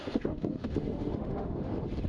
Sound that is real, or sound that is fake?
fake